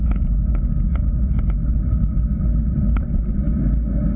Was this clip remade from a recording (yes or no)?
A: no